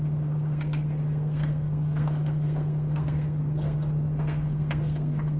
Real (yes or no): no